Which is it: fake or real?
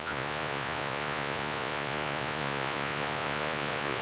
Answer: fake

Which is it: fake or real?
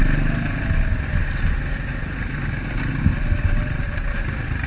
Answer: real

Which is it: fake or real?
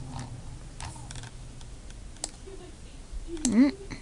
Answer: real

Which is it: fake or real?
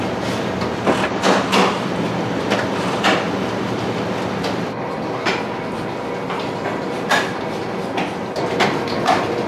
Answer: real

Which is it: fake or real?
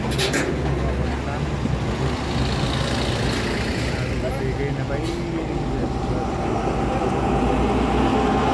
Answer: real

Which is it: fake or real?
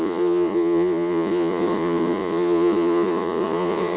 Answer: fake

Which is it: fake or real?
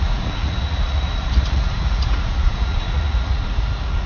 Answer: fake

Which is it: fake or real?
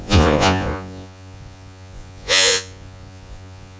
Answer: fake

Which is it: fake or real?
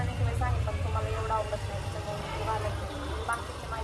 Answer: real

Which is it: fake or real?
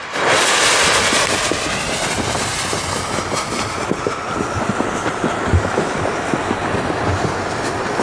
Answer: real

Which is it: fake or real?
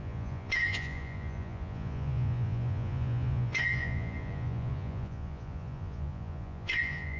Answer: fake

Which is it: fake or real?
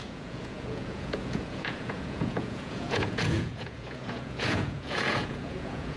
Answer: fake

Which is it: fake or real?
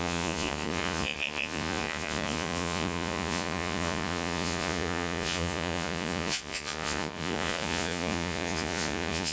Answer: fake